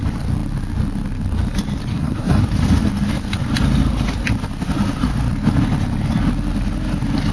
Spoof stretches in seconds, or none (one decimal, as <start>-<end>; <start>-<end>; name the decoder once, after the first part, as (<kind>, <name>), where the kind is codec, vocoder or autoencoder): 1.9-2.4 (codec, SNAC)